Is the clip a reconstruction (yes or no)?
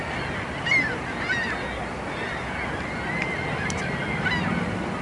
no